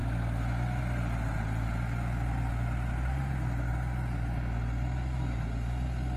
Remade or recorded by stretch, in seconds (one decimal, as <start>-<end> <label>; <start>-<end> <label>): 0.0-6.2 recorded